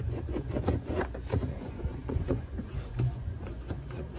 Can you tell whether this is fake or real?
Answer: fake